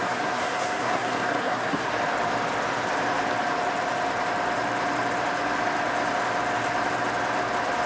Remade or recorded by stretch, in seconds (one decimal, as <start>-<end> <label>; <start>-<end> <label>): 0.0-1.9 remade; 1.9-7.9 recorded